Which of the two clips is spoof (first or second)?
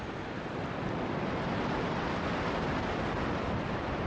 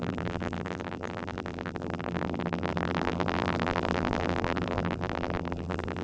second